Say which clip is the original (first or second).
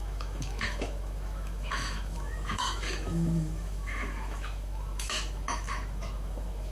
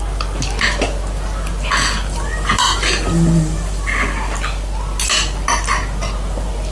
second